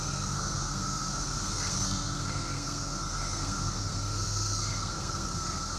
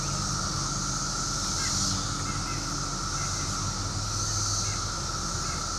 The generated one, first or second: first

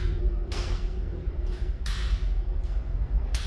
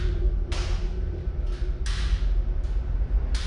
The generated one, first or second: first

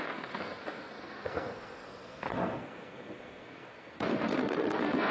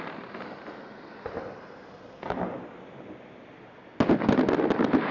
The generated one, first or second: first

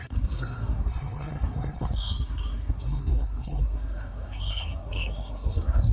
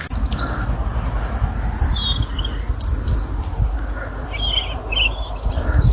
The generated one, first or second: first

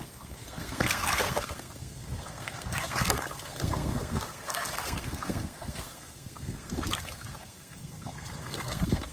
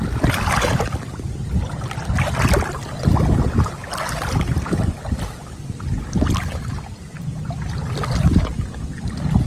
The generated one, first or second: first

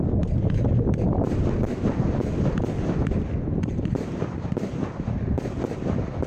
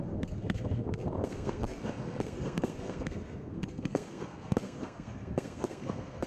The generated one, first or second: second